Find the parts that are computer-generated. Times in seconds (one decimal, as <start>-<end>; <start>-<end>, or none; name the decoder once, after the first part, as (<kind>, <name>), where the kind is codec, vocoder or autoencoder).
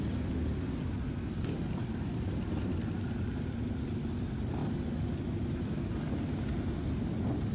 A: none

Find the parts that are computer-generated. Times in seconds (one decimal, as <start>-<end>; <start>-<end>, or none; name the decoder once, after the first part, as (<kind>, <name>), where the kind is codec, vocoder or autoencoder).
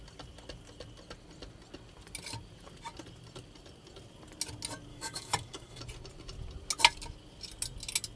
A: 4.9-5.8 (codec, DAC)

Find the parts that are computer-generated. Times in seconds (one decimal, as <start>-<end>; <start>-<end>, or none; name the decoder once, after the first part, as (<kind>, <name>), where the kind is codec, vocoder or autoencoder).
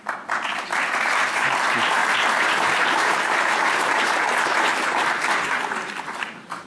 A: 0.0-6.7 (vocoder, BigVGAN v2)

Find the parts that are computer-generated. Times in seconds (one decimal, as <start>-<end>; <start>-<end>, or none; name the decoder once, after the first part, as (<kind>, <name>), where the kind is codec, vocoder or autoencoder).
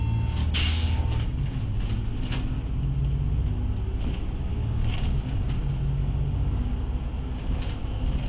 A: 0.4-1.6 (codec, DAC); 4.5-5.5; 6.0-6.8